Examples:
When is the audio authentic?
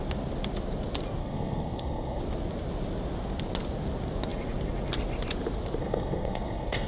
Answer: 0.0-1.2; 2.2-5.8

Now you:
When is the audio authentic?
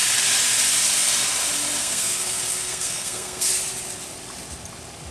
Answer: 0.0-1.8; 3.5-5.1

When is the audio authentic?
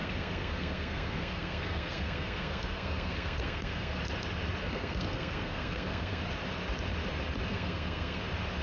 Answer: 4.0-4.6; 6.2-7.5; 8.2-8.6